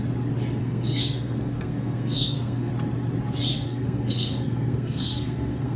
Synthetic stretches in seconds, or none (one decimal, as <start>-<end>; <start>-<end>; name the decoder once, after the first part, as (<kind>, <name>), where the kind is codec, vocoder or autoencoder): 0.6-2.7 (codec, SNAC); 3.5-5.8